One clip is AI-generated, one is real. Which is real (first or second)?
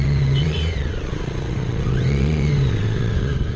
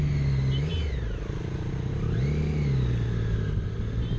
second